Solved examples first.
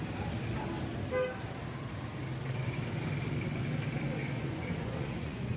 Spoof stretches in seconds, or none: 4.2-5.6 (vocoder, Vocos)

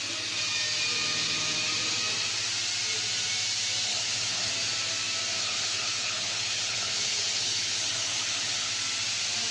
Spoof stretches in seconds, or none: 3.9-4.5 (codec, HILCodec); 5.4-8.7

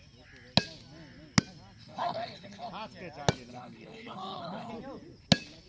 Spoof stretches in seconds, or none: 1.8-2.7 (codec, HILCodec); 3.5-4.7

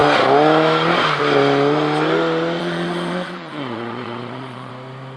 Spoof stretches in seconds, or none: 2.6-4.7 (vocoder, Vocos)